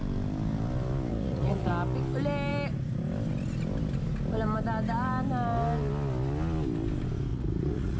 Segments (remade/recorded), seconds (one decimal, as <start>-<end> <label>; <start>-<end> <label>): 0.0-1.1 recorded; 1.1-1.7 remade; 1.7-7.3 recorded; 7.3-8.0 remade